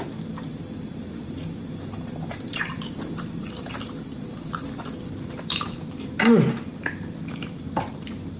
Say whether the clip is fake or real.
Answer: fake